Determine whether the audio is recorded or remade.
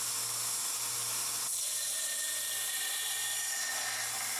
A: recorded